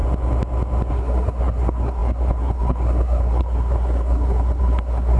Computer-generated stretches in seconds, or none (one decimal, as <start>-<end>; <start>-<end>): 0.9-5.2